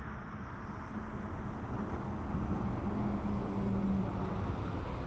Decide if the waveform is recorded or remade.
recorded